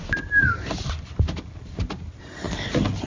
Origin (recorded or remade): recorded